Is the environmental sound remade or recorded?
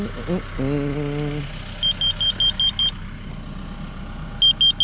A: recorded